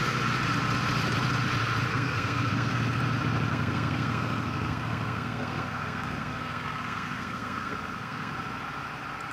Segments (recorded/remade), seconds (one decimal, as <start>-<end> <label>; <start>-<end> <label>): 0.0-1.9 recorded; 1.9-3.0 remade; 3.0-3.5 recorded; 3.5-8.3 remade; 8.3-9.3 recorded